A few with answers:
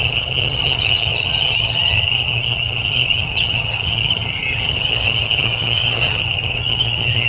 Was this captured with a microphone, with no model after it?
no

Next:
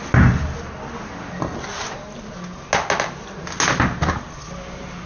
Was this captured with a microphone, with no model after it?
yes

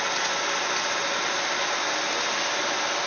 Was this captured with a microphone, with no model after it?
yes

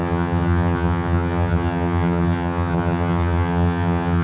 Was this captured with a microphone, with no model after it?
no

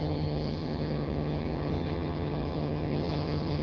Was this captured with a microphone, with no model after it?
no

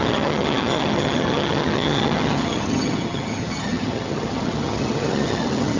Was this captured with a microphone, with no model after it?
no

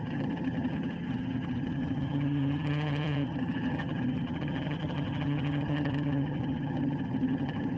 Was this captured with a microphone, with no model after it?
no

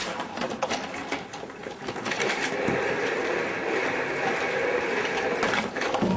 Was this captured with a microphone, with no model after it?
yes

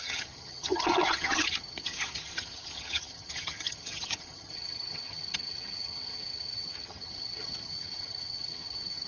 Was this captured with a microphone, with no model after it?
no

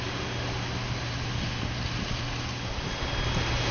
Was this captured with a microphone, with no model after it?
yes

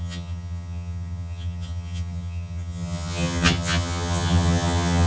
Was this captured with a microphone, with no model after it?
no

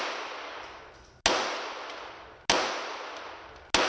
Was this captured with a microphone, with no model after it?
yes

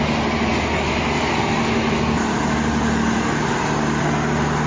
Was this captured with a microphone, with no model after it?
yes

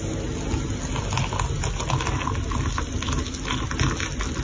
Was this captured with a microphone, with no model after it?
yes